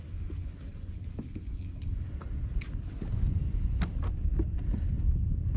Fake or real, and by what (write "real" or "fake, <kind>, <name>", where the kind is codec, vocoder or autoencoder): real